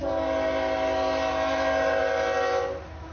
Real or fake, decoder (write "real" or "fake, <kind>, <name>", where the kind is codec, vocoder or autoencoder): real